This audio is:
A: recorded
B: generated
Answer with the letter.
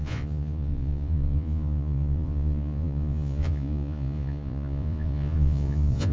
B